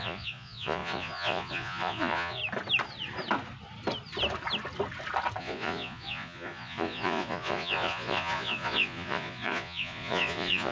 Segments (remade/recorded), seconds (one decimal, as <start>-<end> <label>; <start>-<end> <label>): 0.0-2.4 remade; 2.4-5.4 recorded; 5.4-10.7 remade